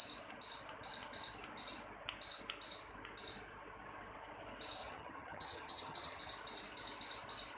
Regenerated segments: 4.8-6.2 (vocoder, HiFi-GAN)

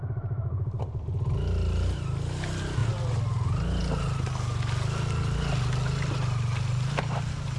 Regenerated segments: none

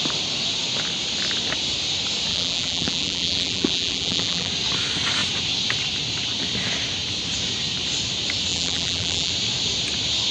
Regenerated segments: 2.3-4.5 (vocoder, BigVGAN v2); 8.5-9.3

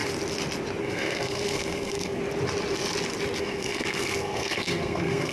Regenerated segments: 0.8-2.2 (codec, SNAC); 3.4-5.3

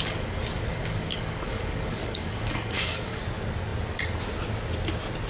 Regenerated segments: 0.0-3.2 (codec, DAC)

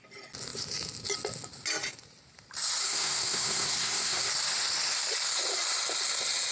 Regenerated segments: 2.8-4.3 (codec, SNAC)